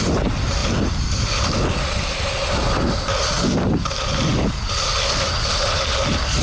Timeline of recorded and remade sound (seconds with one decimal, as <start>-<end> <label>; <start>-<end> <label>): 0.0-6.4 recorded